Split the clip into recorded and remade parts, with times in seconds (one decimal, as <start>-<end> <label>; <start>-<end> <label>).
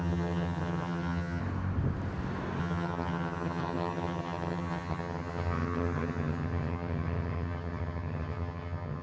0.0-1.4 remade; 1.4-2.6 recorded; 2.6-9.0 remade